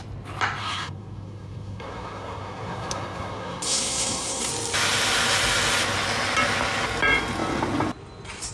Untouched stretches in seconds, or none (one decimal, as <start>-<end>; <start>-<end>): 0.0-0.6; 4.5-8.5